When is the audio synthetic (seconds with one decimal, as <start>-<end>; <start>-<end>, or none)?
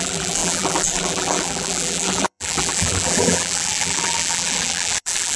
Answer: 0.0-5.4